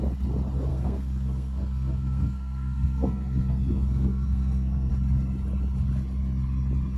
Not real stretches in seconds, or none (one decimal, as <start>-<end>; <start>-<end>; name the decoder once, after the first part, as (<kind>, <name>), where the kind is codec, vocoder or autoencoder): 0.7-4.9 (codec, SNAC)